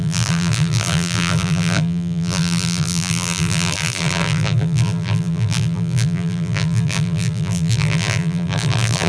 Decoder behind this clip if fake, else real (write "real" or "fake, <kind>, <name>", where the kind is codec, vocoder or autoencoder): fake, vocoder, BigVGAN v2